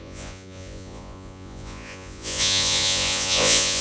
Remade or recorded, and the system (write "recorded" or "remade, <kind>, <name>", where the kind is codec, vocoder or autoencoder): remade, vocoder, Vocos